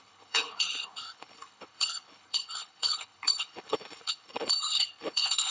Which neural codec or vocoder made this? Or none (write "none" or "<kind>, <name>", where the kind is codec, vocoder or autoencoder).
codec, HILCodec